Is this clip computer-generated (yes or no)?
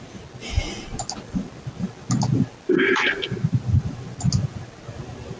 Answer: no